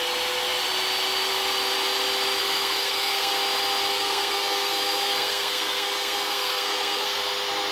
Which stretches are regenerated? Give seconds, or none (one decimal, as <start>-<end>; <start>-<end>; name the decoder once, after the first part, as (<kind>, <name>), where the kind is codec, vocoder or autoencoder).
2.4-3.3 (codec, SNAC); 3.9-7.2